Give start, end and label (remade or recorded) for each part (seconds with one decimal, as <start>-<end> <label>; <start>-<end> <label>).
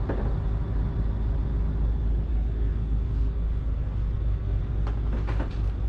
0.0-2.3 recorded; 2.3-4.6 remade; 4.6-5.9 recorded